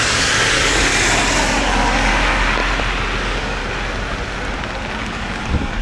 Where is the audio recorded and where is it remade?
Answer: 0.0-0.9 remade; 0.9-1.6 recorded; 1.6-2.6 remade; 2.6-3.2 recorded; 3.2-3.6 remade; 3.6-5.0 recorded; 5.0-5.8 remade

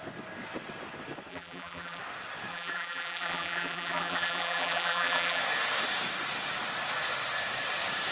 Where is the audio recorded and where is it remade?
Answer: 0.0-1.3 recorded; 1.3-2.0 remade; 2.0-2.5 recorded; 2.5-5.4 remade; 5.4-8.1 recorded